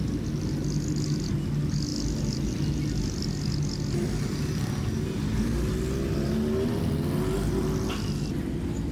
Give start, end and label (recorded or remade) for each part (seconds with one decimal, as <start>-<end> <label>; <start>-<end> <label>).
0.0-8.9 recorded